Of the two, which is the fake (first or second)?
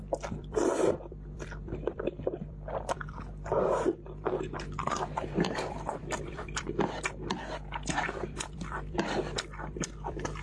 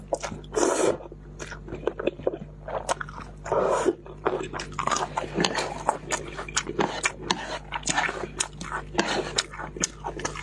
first